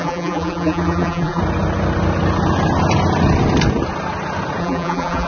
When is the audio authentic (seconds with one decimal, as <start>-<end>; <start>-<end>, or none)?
1.4-4.6